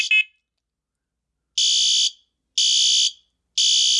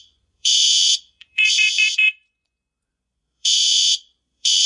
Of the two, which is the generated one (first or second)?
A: second